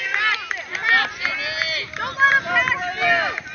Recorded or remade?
recorded